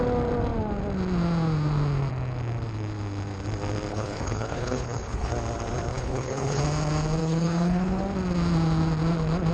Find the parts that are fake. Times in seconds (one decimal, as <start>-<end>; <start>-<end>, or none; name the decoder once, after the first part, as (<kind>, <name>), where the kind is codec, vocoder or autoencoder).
3.9-5.3 (codec, HILCodec); 5.9-6.6; 7.2-8.0

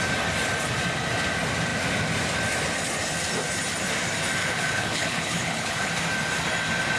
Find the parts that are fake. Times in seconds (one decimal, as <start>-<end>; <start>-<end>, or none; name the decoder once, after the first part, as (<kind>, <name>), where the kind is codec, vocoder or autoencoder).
4.4-5.9 (codec, HILCodec)